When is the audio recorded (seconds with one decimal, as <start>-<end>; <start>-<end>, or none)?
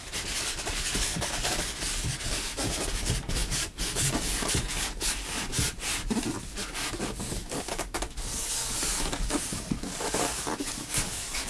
5.5-6.4